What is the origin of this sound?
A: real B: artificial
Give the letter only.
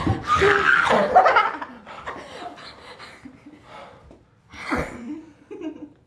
A